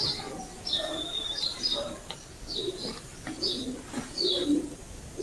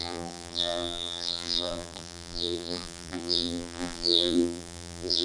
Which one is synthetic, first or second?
second